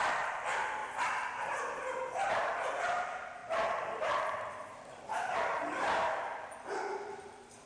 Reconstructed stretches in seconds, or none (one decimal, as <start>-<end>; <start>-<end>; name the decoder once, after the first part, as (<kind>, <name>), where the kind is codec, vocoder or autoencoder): 0.0-0.8 (vocoder, BigVGAN v2); 2.3-7.7